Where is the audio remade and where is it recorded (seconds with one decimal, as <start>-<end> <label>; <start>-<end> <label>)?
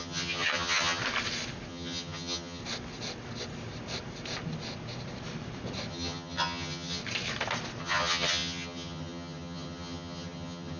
0.0-1.0 remade; 1.0-1.7 recorded; 1.7-2.6 remade; 2.6-5.9 recorded; 5.9-7.0 remade; 7.0-7.8 recorded; 7.8-10.8 remade